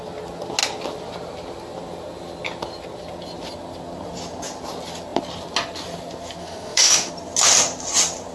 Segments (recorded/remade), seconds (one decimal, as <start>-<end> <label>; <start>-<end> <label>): 0.0-6.4 recorded; 6.4-7.1 remade; 7.1-8.3 recorded